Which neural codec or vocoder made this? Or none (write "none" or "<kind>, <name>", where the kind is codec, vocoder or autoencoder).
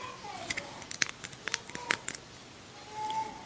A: none